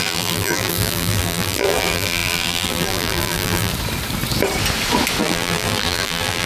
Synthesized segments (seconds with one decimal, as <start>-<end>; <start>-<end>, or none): 0.0-3.7; 5.2-6.5